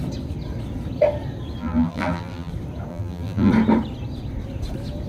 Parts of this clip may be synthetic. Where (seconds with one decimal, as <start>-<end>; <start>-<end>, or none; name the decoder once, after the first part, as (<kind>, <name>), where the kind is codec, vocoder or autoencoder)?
1.6-2.5 (vocoder, BigVGAN v2); 2.9-3.5